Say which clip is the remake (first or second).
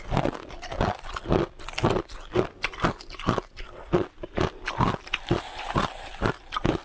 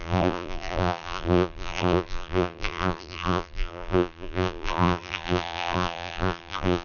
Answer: second